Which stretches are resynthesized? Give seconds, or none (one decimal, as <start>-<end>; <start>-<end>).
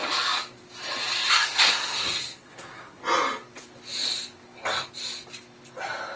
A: 1.3-3.0